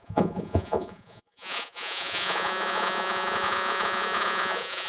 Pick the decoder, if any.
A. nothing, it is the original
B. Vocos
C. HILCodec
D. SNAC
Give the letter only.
B